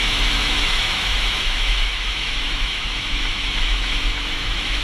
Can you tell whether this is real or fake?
fake